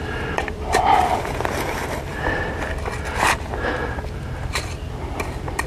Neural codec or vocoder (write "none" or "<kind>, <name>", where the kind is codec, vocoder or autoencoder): vocoder, BigVGAN v2